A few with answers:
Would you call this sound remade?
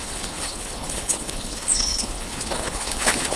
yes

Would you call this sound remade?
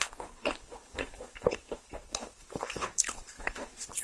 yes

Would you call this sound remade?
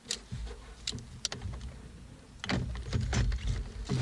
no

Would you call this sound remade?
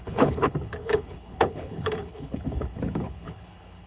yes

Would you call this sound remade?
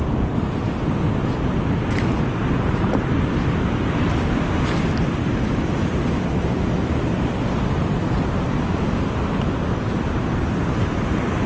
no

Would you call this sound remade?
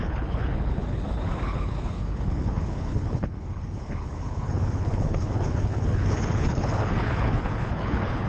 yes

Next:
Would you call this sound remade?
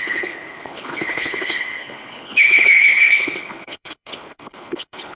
yes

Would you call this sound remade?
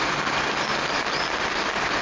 no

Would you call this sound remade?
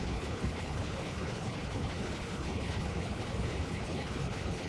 yes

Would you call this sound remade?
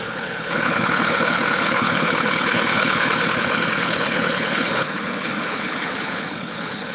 yes